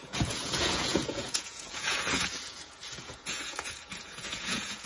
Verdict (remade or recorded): remade